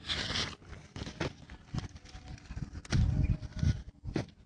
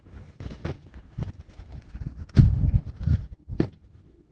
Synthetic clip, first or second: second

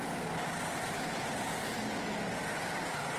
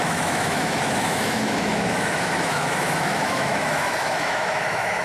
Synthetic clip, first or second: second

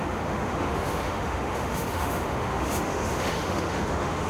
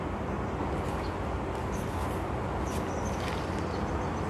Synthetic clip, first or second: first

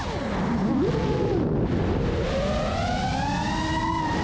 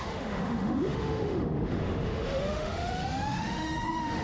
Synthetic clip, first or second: second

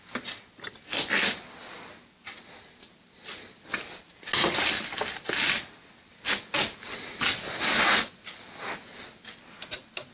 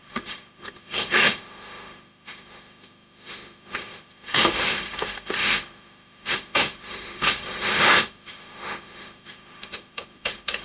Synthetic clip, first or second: second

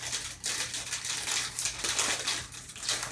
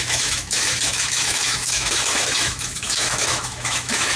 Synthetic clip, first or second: second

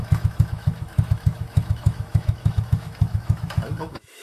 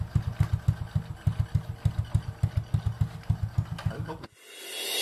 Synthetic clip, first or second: first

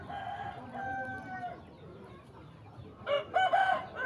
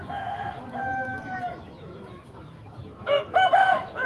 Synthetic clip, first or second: second